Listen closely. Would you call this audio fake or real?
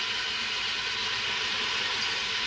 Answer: real